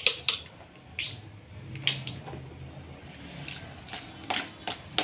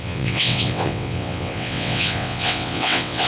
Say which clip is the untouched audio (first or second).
first